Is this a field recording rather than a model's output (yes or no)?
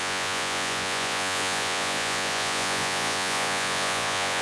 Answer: no